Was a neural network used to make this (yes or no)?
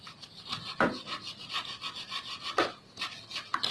no